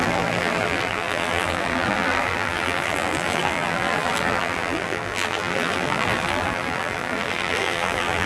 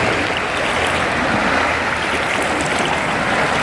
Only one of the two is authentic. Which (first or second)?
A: second